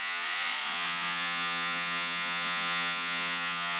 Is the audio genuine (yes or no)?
no